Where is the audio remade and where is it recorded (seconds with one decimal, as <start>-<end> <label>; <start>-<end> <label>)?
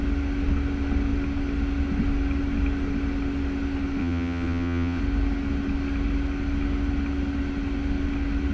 0.0-4.0 recorded; 4.0-5.0 remade; 5.0-8.5 recorded